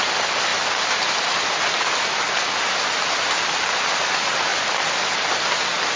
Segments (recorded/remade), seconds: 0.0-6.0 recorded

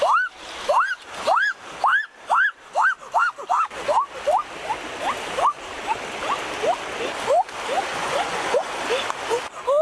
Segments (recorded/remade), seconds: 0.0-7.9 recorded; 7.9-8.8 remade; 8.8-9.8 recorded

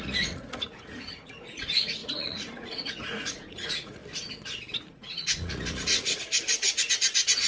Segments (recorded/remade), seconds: 0.0-4.0 remade; 4.0-4.9 recorded; 4.9-7.5 remade